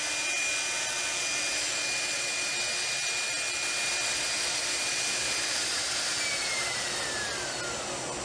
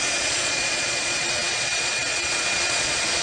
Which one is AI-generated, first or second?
second